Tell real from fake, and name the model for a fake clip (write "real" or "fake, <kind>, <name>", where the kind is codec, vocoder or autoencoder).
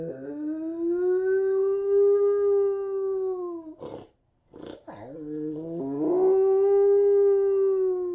real